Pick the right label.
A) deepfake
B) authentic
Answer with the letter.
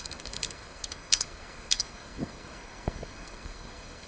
A